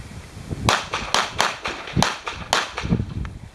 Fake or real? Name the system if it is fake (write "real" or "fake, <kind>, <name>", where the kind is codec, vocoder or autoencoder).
real